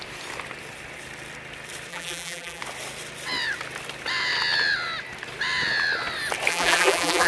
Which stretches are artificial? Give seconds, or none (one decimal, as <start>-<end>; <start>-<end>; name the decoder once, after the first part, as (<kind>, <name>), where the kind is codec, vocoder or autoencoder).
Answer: 1.9-2.6 (vocoder, BigVGAN v2); 6.5-7.3